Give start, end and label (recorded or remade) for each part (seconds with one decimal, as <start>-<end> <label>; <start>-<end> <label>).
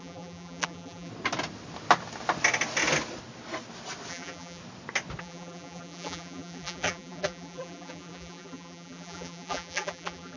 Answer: 0.0-1.1 remade; 1.1-4.1 recorded; 4.1-4.6 remade; 4.6-5.2 recorded; 5.2-10.4 remade